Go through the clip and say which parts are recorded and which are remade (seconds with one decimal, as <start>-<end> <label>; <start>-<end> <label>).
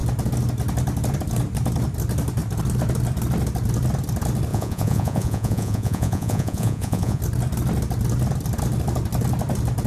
0.0-4.5 recorded; 4.5-7.2 remade; 7.2-9.9 recorded